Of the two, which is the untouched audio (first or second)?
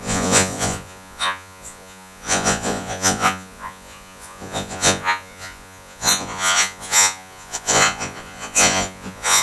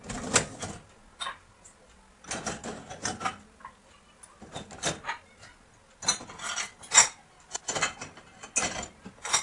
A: second